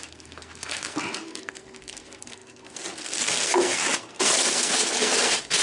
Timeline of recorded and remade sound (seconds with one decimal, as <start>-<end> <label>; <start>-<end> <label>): 0.0-5.6 remade